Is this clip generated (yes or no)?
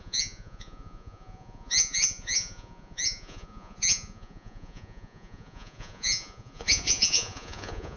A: yes